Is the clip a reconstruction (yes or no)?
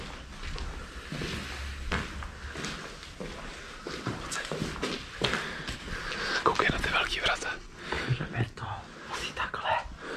no